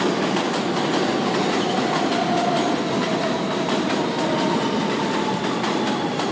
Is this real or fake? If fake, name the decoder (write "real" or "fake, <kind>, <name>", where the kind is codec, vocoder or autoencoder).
real